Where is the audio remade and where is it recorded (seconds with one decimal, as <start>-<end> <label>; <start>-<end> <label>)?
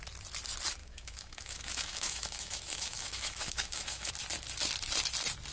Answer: 0.0-0.8 recorded; 0.8-4.1 remade; 4.1-5.5 recorded